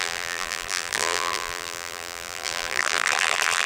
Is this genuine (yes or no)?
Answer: no